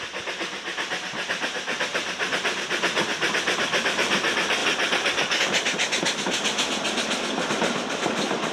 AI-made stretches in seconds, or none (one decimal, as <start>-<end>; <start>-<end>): none